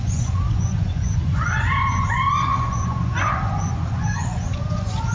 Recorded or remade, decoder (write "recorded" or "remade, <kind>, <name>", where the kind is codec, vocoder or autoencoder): remade, vocoder, Vocos